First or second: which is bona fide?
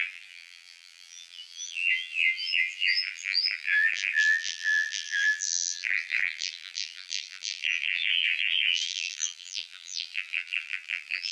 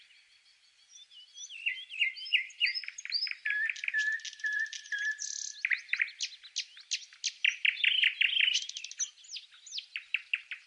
second